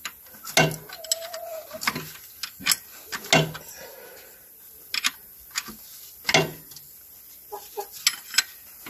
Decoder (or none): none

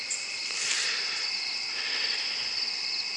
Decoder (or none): none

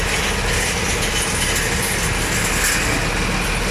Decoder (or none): none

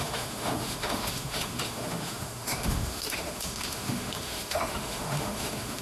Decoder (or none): autoencoder, DAC-VAE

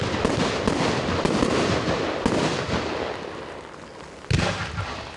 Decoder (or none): none